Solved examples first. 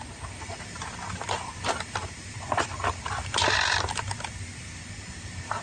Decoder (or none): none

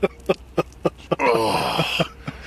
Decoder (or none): none